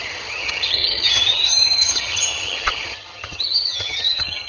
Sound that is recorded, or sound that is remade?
remade